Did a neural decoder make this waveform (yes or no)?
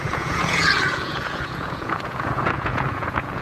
yes